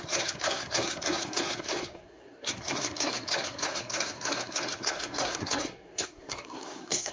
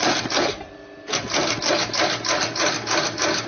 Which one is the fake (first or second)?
first